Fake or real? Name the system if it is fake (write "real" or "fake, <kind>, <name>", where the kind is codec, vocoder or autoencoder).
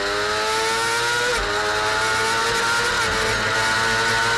real